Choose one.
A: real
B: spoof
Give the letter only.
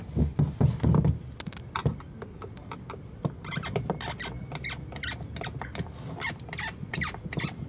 A